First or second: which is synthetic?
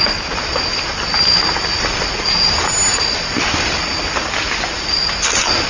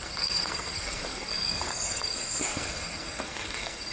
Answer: second